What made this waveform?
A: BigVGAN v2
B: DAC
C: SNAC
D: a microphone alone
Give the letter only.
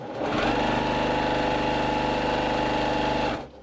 D